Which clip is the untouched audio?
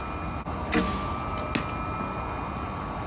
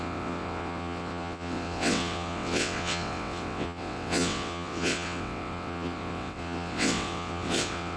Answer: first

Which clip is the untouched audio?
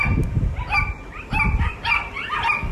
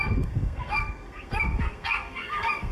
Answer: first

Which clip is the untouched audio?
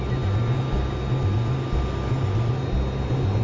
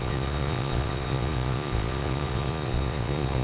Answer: first